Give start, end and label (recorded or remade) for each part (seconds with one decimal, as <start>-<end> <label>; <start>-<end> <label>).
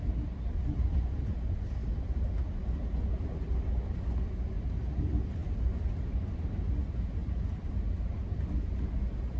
0.0-9.4 recorded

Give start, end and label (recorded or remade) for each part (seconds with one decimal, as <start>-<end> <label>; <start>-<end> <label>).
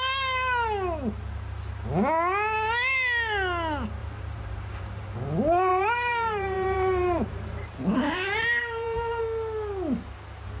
0.0-4.0 recorded; 4.0-5.1 remade; 5.1-5.7 recorded; 5.7-9.2 remade; 9.2-10.6 recorded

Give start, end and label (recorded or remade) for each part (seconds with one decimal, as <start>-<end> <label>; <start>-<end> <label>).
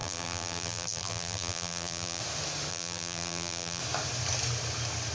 0.0-2.2 remade; 2.2-2.7 recorded; 2.7-3.8 remade; 3.8-5.1 recorded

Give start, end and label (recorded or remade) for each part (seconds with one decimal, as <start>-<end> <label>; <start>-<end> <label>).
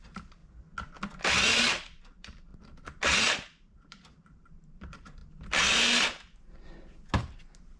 0.0-0.4 remade; 0.4-1.6 recorded; 1.6-2.5 remade; 2.5-3.2 recorded; 3.2-5.2 remade; 5.2-7.2 recorded; 7.2-7.8 remade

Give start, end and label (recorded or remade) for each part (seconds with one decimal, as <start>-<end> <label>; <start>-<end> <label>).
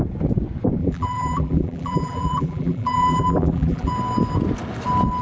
0.0-0.8 recorded; 0.8-3.9 remade; 3.9-5.2 recorded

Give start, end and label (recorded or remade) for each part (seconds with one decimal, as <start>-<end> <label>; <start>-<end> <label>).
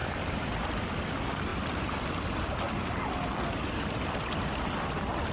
0.0-0.5 remade; 0.5-5.3 recorded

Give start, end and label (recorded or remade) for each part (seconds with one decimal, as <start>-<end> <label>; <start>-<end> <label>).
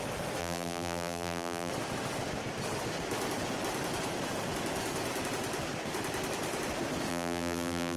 0.0-0.4 recorded; 0.4-1.7 remade; 1.7-7.1 recorded; 7.1-8.0 remade